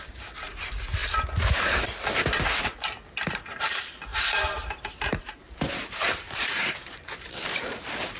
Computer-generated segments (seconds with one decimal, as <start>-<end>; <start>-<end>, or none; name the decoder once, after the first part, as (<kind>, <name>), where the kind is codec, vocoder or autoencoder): 0.0-1.0 (vocoder, BigVGAN v2); 2.6-8.2